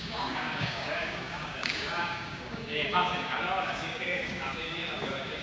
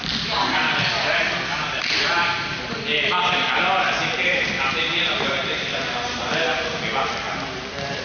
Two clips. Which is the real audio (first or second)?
second